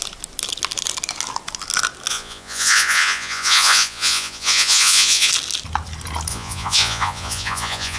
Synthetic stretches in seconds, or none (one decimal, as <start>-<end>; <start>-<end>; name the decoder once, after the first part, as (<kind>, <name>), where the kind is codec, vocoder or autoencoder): 2.1-5.3 (vocoder, Vocos); 6.3-8.0